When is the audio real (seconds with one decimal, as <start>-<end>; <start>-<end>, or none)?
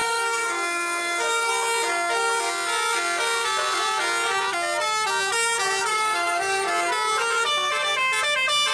1.5-5.9; 6.7-8.7